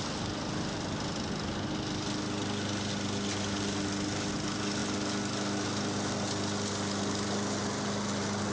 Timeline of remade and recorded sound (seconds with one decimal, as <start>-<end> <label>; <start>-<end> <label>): 0.0-8.5 recorded